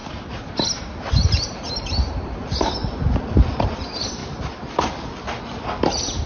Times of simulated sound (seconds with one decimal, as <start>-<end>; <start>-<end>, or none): 1.0-2.8; 3.8-4.2

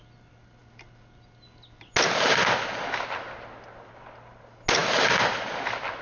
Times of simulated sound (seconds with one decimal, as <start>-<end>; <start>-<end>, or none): none

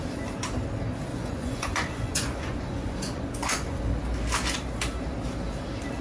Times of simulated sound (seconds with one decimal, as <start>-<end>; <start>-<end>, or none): 1.1-3.8